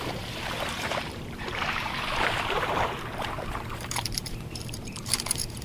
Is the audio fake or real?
fake